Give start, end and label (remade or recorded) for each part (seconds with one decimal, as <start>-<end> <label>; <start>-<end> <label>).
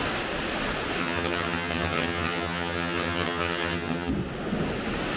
0.0-1.0 recorded; 1.0-4.1 remade; 4.1-5.2 recorded